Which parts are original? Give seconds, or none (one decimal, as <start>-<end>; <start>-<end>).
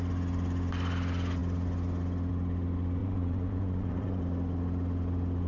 0.0-3.0; 4.2-5.5